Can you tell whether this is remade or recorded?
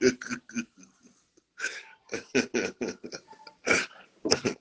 recorded